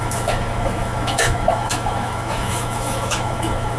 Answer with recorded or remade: remade